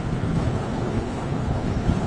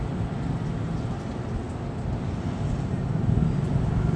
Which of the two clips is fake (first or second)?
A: first